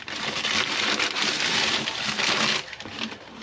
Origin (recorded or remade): recorded